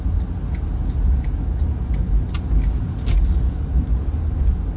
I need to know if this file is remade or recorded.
recorded